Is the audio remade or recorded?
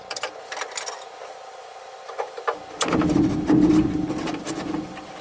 recorded